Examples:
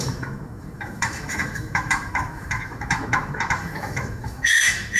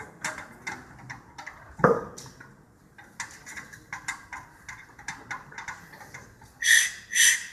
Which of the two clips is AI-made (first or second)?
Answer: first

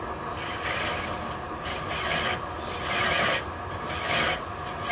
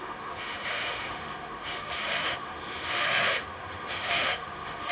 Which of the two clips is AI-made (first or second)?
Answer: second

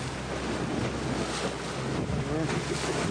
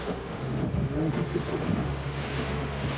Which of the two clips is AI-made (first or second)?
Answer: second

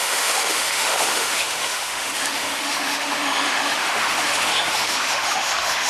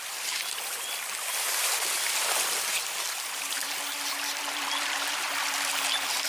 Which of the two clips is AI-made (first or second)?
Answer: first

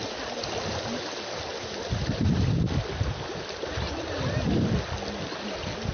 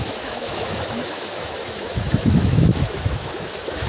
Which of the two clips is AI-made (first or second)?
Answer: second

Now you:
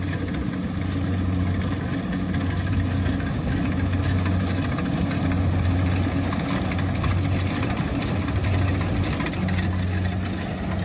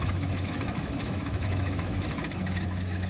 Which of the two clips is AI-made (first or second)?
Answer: second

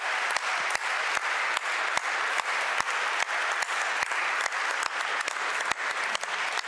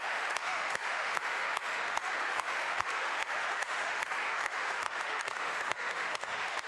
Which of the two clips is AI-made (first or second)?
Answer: second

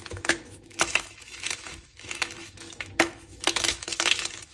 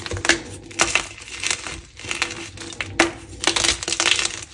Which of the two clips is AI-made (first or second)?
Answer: first